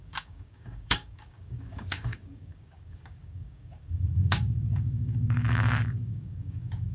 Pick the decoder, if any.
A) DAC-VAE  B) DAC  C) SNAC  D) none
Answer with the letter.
B